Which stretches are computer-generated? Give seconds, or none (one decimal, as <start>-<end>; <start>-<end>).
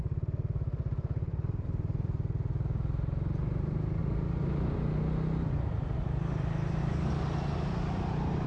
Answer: none